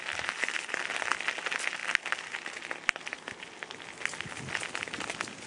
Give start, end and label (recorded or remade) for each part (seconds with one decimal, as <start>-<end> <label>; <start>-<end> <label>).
0.0-5.5 recorded